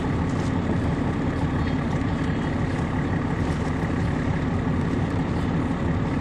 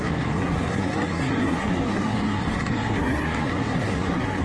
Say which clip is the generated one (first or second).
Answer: second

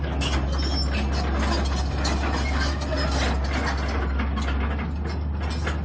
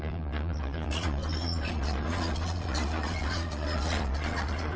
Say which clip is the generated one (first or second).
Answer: second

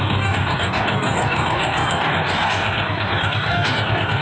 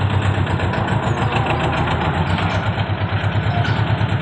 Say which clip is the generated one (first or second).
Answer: first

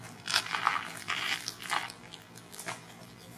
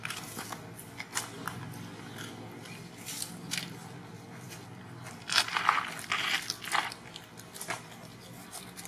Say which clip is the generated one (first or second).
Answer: first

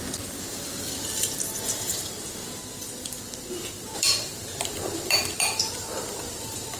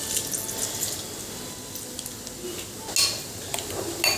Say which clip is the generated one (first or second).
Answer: first